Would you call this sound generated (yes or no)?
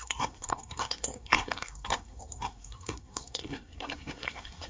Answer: yes